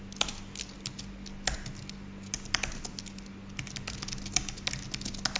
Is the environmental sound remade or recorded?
recorded